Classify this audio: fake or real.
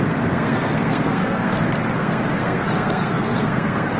fake